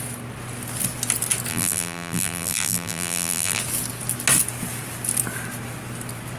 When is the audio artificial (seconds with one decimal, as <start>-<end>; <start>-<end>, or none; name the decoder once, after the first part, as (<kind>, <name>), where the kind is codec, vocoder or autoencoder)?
1.5-3.6 (vocoder, BigVGAN v2)